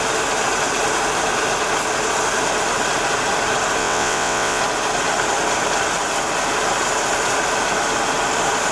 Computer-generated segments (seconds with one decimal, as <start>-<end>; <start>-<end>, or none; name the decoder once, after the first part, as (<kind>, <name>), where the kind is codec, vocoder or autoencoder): 3.8-4.6 (vocoder, WaveNeXt)